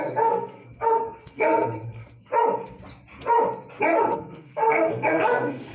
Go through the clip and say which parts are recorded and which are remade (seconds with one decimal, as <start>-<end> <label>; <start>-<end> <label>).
0.0-2.3 remade; 2.3-4.0 recorded; 4.0-5.7 remade